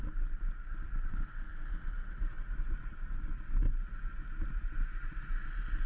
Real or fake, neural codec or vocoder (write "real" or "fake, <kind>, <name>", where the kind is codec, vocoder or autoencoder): real